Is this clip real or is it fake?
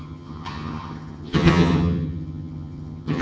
fake